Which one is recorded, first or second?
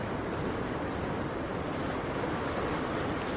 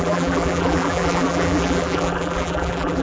first